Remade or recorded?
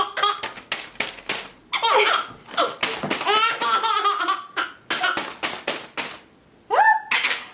recorded